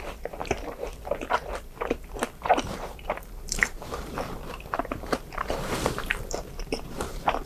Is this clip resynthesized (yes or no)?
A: yes